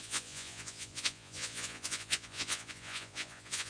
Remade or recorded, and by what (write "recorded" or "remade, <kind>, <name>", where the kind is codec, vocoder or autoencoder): remade, vocoder, Vocos